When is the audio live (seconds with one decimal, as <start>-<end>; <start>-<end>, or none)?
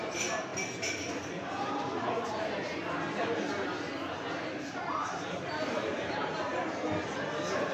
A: 0.5-1.2; 2.7-4.4; 6.5-7.7